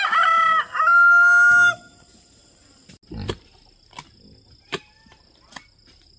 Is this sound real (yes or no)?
yes